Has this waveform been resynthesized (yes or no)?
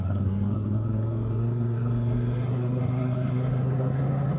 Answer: yes